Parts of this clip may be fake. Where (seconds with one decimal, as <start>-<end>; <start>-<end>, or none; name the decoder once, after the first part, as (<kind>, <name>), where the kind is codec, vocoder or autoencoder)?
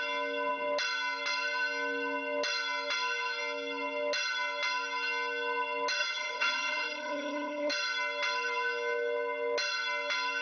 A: 6.0-7.7 (vocoder, HiFi-GAN)